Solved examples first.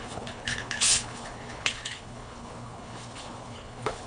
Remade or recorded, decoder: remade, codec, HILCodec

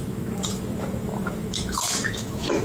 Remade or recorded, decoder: remade, autoencoder, DAC-VAE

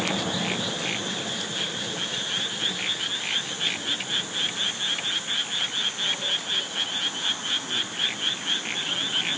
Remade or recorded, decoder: recorded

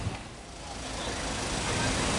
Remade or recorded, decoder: recorded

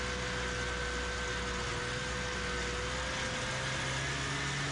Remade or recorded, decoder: recorded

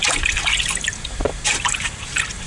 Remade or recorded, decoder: recorded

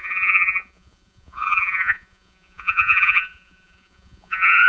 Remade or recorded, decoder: remade, vocoder, Vocos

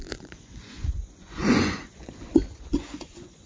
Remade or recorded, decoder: remade, vocoder, Vocos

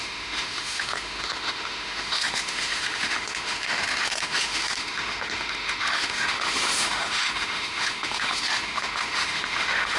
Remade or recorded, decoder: remade, autoencoder, DAC-VAE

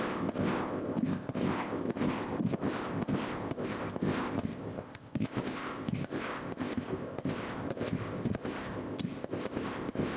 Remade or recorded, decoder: remade, codec, ZipCodec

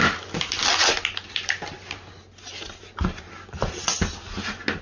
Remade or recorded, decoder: recorded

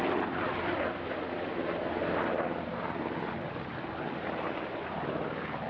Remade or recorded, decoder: recorded